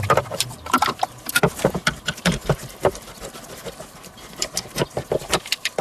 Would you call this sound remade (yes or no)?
yes